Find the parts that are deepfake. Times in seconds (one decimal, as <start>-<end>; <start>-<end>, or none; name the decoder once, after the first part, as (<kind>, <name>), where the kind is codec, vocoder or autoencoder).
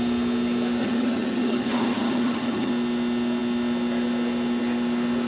0.8-2.7 (vocoder, HiFi-GAN)